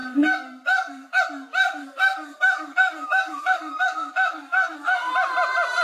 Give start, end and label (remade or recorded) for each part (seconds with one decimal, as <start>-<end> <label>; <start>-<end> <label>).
0.0-1.2 remade; 1.2-1.6 recorded; 1.6-5.1 remade; 5.1-5.8 recorded